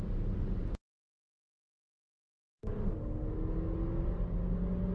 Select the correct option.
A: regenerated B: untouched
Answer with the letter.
B